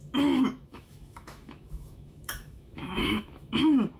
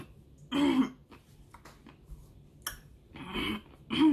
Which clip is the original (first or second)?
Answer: second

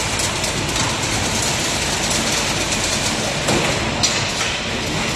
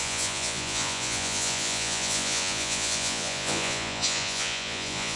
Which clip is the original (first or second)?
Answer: first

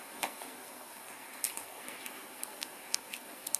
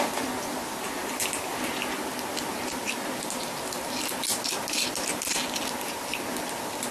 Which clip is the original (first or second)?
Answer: second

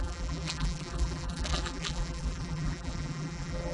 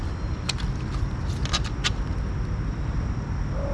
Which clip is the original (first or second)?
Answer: second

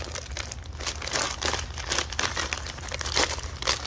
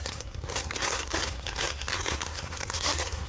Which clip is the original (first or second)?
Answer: first